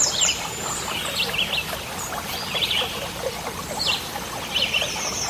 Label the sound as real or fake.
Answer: real